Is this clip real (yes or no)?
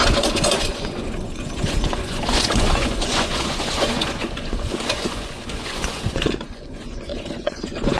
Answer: no